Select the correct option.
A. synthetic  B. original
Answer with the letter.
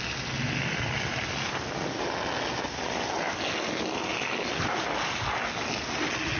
B